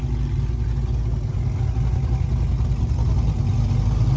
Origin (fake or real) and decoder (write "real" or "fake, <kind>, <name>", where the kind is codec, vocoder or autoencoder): real